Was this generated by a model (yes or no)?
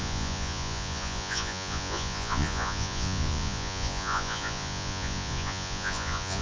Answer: yes